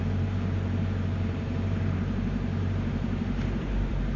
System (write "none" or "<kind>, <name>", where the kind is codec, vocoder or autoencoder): vocoder, BigVGAN v2